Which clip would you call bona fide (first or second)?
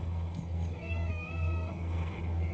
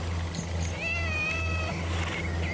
second